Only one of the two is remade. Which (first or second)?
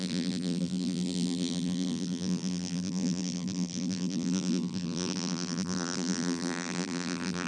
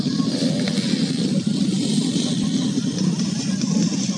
first